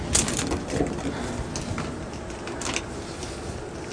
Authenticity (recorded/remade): recorded